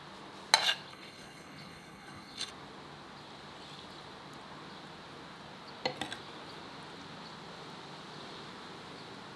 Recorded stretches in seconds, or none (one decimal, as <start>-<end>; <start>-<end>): 0.0-0.9; 2.5-9.4